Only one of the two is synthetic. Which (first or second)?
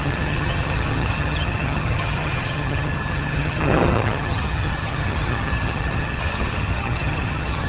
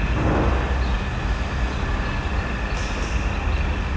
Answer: first